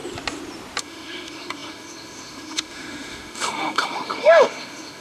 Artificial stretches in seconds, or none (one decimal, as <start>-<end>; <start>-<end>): 0.8-5.0